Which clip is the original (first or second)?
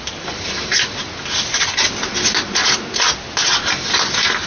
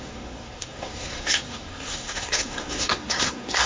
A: first